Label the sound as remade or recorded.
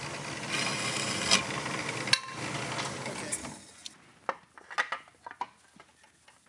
recorded